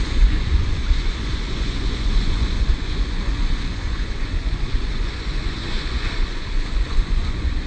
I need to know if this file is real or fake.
fake